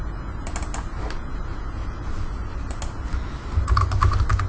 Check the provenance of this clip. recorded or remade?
recorded